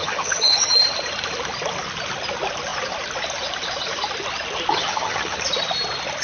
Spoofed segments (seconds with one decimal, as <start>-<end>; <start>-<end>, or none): 0.0-0.6; 4.7-5.4